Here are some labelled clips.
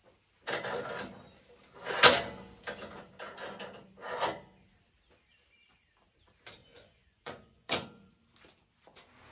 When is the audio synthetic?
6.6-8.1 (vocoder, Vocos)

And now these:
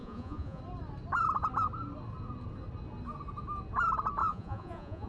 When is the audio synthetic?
0.0-0.6 (vocoder, Vocos); 4.2-5.1

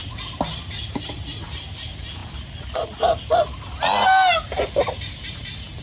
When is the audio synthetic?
none

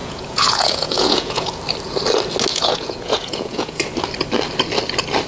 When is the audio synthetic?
0.0-1.6 (vocoder, Vocos); 2.5-3.8

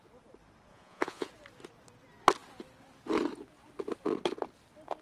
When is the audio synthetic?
0.7-1.3 (vocoder, Vocos)